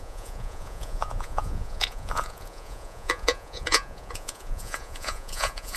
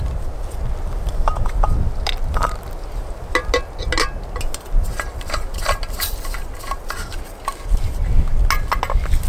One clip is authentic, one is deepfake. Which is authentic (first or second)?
second